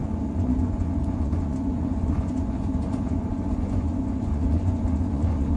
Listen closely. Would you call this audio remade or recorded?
remade